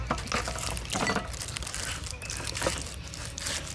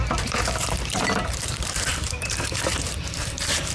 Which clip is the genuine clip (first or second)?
first